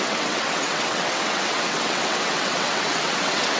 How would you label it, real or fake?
fake